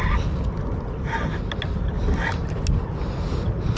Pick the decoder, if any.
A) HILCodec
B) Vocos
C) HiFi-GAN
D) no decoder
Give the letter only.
D